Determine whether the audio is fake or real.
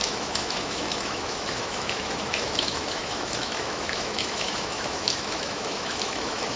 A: fake